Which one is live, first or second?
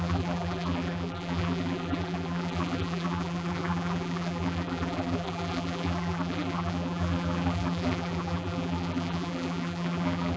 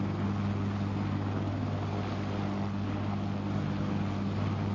second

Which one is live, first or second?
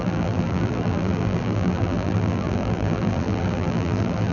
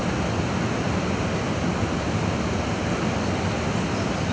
second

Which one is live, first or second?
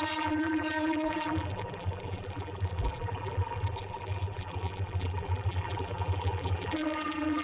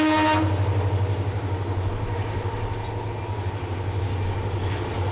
second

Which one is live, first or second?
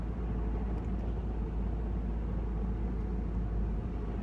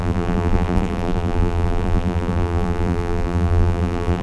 first